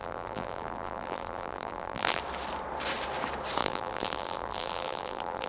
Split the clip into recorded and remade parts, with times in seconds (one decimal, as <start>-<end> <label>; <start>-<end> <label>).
0.0-2.2 remade; 2.2-3.6 recorded; 3.6-5.5 remade

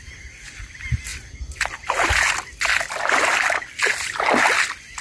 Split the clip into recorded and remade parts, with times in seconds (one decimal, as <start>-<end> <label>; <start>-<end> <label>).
0.0-5.0 recorded